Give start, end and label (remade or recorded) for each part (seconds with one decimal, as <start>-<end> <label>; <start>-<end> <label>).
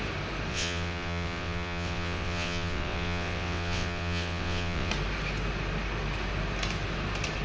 0.0-0.5 recorded; 0.5-4.9 remade; 4.9-7.4 recorded